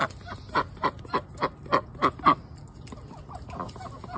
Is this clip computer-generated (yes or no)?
no